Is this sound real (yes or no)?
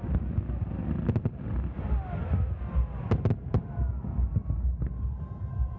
yes